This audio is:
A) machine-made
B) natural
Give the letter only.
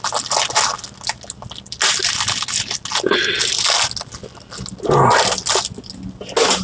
B